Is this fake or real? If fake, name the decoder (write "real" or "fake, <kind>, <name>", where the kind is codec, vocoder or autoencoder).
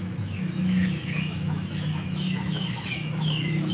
fake, autoencoder, DAC-VAE